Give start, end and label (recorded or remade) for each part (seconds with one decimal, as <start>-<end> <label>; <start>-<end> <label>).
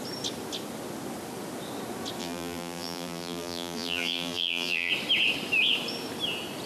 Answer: 0.0-2.2 recorded; 2.2-4.9 remade; 4.9-6.7 recorded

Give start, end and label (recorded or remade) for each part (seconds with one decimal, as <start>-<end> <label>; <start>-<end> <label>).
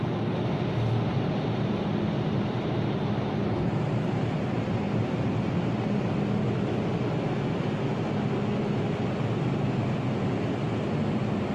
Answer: 0.0-1.1 recorded; 1.1-6.3 remade; 6.3-11.5 recorded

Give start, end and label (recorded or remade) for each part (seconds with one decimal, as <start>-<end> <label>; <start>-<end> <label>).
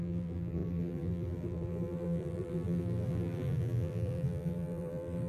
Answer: 0.0-5.3 remade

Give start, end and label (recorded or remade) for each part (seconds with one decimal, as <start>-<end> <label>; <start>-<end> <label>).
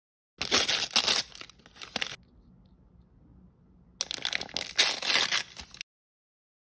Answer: 0.0-6.7 recorded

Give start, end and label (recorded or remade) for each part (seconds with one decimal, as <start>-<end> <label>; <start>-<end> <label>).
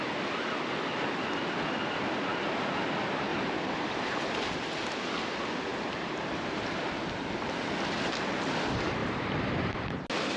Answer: 0.0-3.3 recorded; 3.3-4.5 remade; 4.5-5.7 recorded; 5.7-6.7 remade; 6.7-9.0 recorded; 9.0-9.9 remade; 9.9-10.4 recorded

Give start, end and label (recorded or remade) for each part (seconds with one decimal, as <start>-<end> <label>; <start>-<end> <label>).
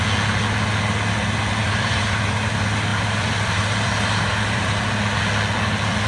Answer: 0.0-1.6 recorded; 1.6-2.5 remade; 2.5-2.9 recorded; 2.9-4.8 remade; 4.8-6.1 recorded